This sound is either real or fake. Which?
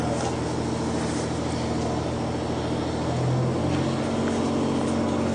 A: real